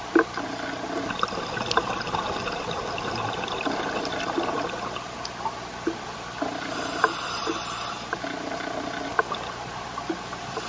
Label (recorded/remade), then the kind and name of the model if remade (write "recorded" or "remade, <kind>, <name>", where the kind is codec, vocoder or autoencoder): recorded